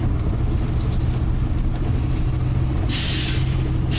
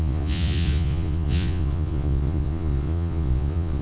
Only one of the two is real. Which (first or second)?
first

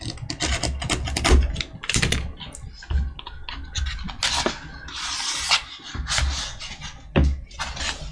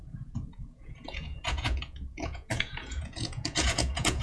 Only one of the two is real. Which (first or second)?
first